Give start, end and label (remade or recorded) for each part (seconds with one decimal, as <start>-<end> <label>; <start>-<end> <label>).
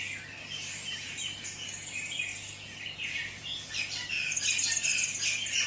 0.0-5.7 recorded